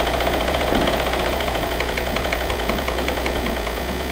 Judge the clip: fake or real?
fake